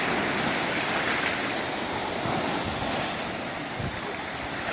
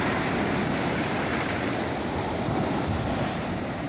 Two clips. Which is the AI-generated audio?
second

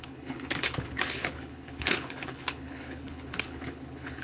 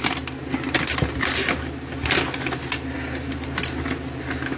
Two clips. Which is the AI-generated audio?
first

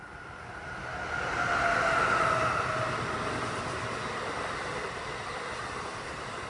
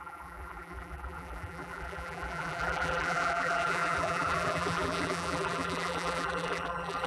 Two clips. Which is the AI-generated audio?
second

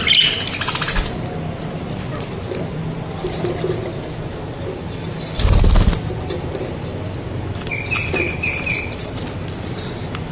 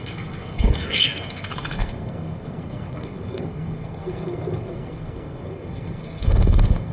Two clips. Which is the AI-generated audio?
second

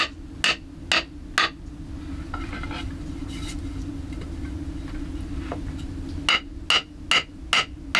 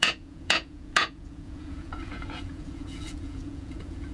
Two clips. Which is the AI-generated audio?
second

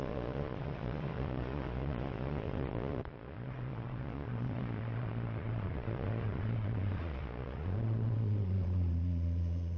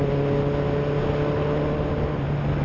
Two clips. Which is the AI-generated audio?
first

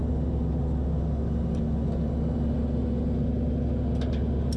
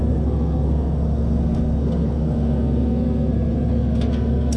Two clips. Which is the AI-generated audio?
second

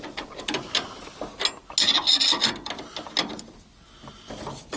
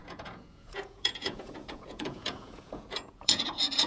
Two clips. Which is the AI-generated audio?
second